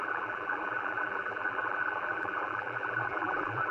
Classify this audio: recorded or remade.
remade